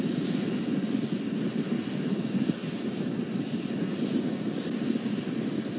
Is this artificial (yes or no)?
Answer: no